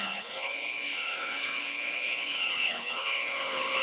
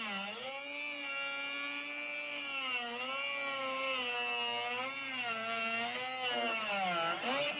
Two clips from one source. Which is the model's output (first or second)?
first